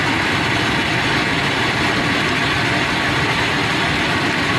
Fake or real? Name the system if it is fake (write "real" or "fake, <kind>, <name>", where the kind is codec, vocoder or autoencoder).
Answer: real